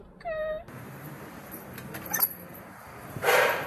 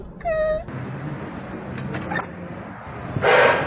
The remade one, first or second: first